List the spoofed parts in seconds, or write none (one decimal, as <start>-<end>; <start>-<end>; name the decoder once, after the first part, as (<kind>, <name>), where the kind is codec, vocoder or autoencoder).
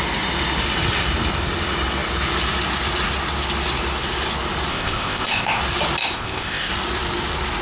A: 4.7-5.6 (codec, ZipCodec); 6.0-6.7